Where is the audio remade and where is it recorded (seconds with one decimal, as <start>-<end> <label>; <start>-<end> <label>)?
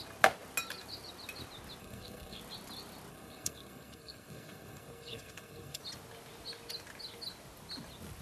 0.0-1.8 recorded; 1.8-2.4 remade; 2.4-3.1 recorded; 3.1-5.8 remade; 5.8-8.2 recorded